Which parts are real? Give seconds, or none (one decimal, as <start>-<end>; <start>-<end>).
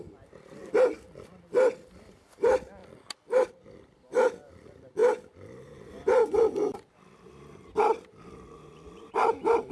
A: 0.0-9.7